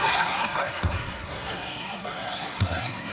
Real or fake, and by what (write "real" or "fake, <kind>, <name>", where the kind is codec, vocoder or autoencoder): fake, codec, SNAC